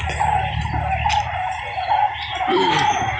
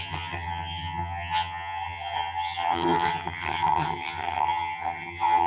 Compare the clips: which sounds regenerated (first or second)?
second